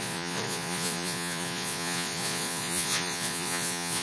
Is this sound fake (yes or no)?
yes